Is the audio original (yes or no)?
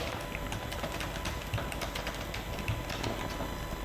yes